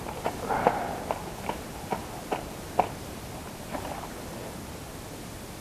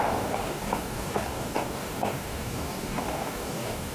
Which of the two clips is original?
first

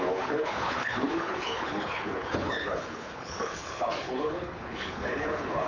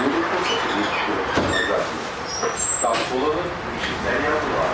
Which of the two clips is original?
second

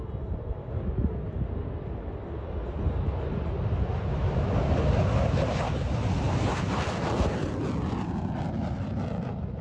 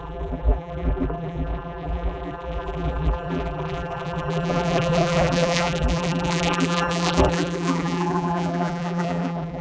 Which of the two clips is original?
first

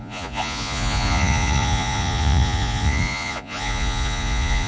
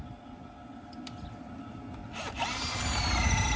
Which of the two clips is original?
second